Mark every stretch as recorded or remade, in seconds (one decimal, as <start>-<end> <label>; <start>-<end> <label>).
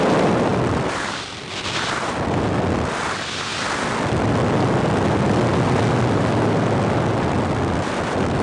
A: 0.0-0.5 recorded; 0.5-1.3 remade; 1.3-8.4 recorded